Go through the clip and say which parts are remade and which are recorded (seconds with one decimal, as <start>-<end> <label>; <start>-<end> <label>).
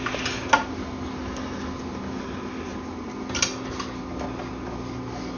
0.0-5.4 recorded